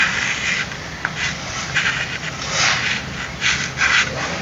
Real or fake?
real